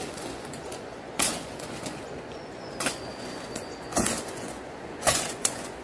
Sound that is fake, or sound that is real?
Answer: fake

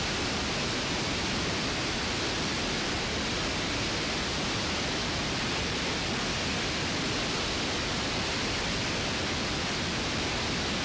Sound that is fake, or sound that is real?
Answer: real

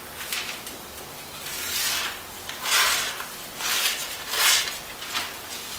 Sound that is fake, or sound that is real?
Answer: real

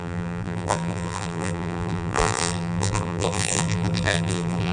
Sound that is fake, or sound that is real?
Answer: fake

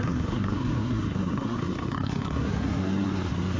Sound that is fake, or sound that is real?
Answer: fake